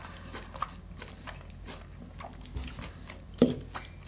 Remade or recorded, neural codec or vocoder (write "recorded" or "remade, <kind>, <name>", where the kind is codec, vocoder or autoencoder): recorded